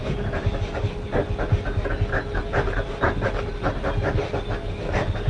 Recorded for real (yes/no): yes